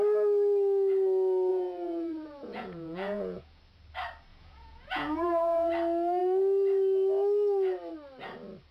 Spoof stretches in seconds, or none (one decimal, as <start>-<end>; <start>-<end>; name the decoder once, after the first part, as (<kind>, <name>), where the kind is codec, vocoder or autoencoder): 1.5-3.6 (vocoder, Vocos); 4.3-5.7

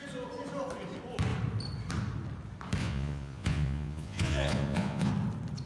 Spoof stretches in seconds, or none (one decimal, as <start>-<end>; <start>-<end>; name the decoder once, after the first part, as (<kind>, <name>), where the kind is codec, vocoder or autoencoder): 2.8-5.1 (vocoder, Vocos)

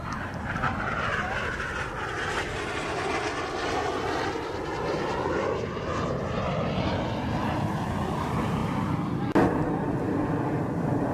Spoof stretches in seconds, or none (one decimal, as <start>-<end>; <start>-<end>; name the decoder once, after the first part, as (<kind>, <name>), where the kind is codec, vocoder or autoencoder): none

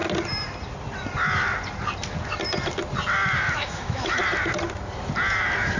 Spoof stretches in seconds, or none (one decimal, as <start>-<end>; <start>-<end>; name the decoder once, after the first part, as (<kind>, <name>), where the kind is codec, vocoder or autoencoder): 3.5-4.2 (autoencoder, DAC-VAE)

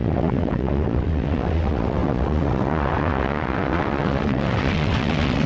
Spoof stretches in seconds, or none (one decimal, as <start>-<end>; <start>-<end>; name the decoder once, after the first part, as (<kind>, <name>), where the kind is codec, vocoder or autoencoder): 0.0-5.5 (vocoder, WaveNeXt)

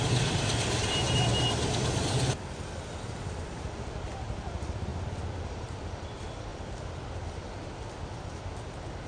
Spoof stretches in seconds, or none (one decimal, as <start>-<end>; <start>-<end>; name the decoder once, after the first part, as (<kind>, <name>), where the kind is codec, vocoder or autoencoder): 0.0-4.9 (vocoder, BigVGAN v2); 5.4-6.5

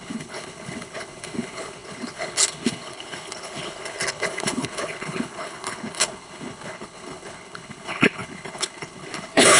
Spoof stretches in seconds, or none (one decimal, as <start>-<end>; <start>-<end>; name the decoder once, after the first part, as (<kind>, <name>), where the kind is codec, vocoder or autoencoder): 0.0-9.6 (codec, HILCodec)